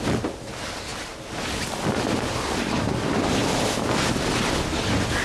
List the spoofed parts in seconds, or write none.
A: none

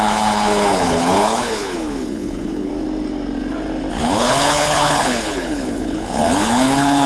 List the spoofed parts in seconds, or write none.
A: 0.0-2.7 (codec, HILCodec); 3.9-7.1